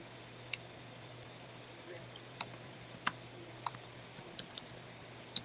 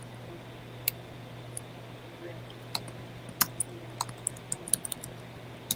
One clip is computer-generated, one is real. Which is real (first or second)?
second